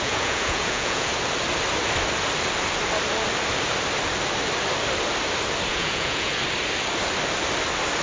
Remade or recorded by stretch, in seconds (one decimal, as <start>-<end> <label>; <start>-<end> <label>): 0.0-1.1 remade; 1.1-5.7 recorded; 5.7-6.4 remade; 6.4-8.0 recorded